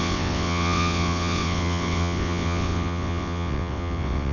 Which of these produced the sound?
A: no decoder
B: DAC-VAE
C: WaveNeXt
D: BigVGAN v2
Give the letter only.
C